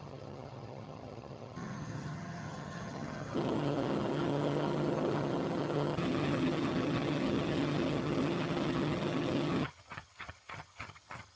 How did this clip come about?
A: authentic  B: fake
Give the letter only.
B